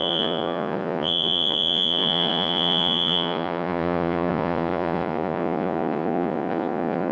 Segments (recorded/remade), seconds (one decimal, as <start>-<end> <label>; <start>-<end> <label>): 0.0-7.1 remade